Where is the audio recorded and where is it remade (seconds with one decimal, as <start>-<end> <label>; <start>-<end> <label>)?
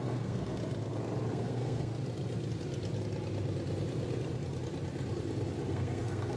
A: 0.0-0.6 remade; 0.6-1.3 recorded; 1.3-1.9 remade; 1.9-5.7 recorded; 5.7-6.4 remade